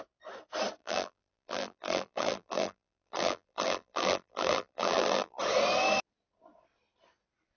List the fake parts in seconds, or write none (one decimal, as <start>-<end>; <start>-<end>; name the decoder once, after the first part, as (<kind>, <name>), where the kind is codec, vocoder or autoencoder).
0.8-5.4 (vocoder, BigVGAN v2)